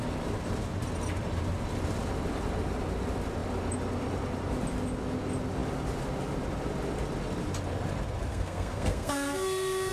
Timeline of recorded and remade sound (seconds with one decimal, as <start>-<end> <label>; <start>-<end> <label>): 0.0-8.3 recorded; 8.3-9.9 remade